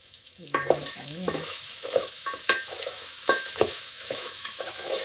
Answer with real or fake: fake